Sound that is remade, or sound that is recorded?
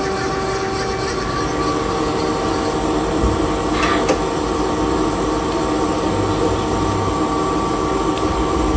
recorded